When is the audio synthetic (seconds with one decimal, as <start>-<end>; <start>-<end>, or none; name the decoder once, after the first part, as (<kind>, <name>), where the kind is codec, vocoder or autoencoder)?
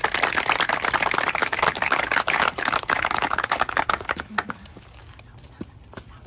1.4-5.0 (codec, DAC)